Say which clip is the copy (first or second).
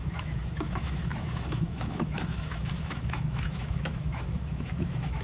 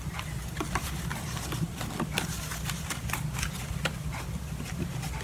first